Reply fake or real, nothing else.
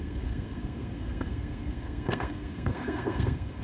fake